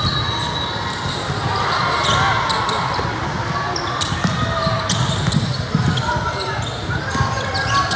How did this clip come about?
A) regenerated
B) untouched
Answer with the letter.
B